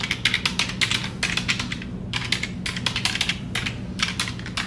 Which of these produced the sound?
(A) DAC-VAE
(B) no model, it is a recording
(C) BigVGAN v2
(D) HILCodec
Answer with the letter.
B